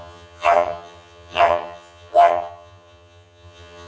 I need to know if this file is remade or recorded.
remade